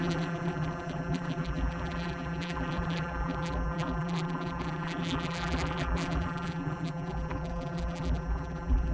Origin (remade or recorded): remade